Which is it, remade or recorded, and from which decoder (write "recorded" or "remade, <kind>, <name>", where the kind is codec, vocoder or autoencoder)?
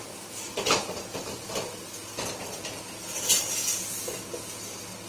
recorded